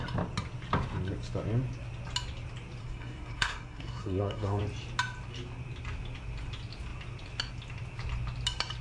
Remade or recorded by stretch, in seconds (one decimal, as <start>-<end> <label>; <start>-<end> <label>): 0.0-2.8 recorded; 2.8-4.6 remade; 4.6-8.8 recorded